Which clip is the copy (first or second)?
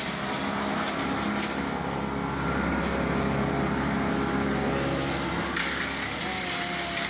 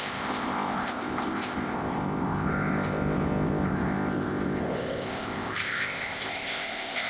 second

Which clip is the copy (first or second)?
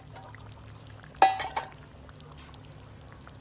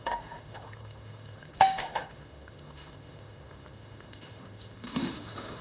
second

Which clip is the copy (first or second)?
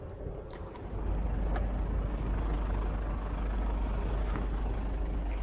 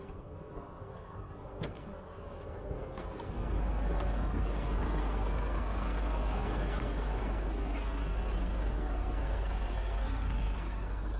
second